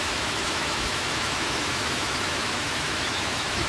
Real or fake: fake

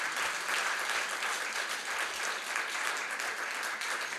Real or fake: real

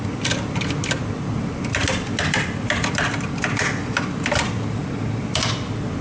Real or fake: real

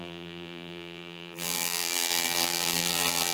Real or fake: fake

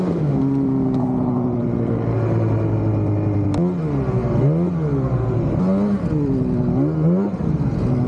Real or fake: real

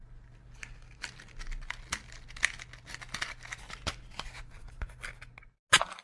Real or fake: real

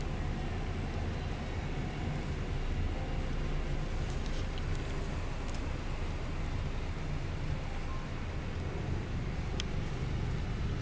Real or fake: real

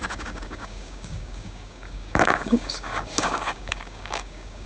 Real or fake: fake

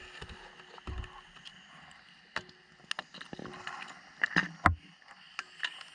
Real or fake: real